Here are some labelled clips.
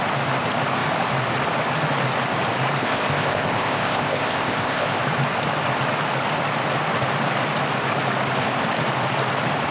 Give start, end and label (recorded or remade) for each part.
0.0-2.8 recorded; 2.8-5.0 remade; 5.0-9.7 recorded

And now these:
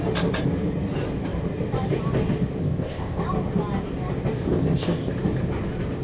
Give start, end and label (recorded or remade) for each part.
0.0-2.6 recorded; 2.6-3.2 remade; 3.2-4.5 recorded; 4.5-5.1 remade; 5.1-6.0 recorded

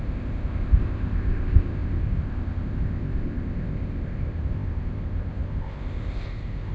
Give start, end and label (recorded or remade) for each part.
0.0-6.7 remade

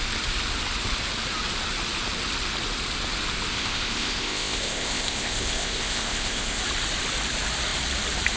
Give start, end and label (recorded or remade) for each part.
0.0-3.5 recorded; 3.5-6.6 remade; 6.6-8.4 recorded

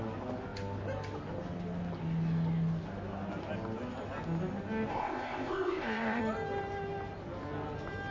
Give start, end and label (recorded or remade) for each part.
0.0-4.9 recorded; 4.9-6.2 remade; 6.2-8.1 recorded